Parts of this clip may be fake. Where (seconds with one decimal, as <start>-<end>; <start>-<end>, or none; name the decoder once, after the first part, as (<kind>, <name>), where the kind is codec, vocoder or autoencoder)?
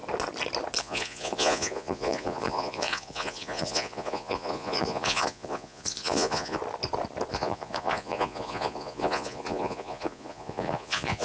0.8-6.6 (vocoder, Vocos); 7.3-11.2